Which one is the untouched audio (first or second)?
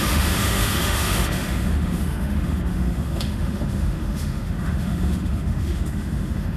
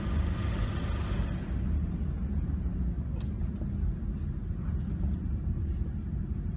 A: second